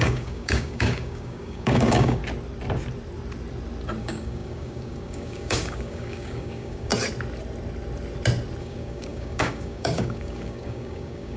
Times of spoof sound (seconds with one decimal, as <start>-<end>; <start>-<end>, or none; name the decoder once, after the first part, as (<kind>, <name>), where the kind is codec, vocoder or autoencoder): 0.0-2.2 (codec, DAC); 4.0-6.9; 8.6-11.4